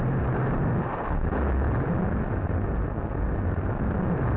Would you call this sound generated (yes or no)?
no